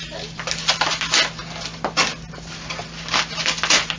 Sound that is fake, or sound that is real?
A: real